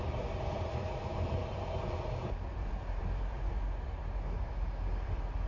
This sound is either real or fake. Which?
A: fake